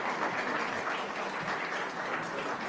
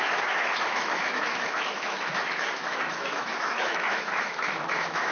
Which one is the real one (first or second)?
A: first